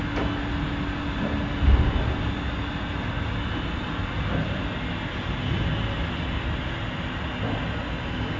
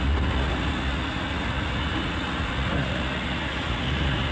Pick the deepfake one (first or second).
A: second